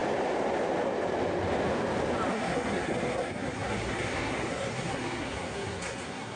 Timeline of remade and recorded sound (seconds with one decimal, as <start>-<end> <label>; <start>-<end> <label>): 0.0-2.3 recorded; 2.3-6.4 remade